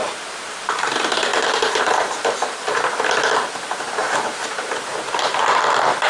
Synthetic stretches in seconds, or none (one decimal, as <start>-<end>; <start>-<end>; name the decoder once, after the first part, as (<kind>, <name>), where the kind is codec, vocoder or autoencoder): 0.0-0.8 (vocoder, BigVGAN v2); 1.3-2.1; 4.0-5.6